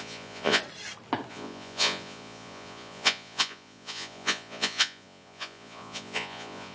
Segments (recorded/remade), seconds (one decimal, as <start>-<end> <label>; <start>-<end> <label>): 0.0-0.6 remade; 0.6-1.3 recorded; 1.3-6.7 remade